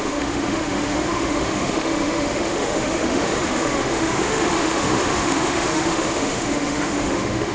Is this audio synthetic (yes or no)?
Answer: yes